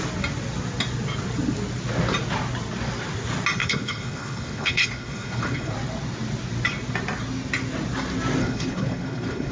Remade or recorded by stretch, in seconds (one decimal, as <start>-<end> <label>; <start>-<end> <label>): 0.0-3.6 recorded; 3.6-5.7 remade; 5.7-8.4 recorded; 8.4-9.5 remade